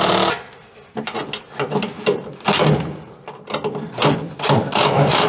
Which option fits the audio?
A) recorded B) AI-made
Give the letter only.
A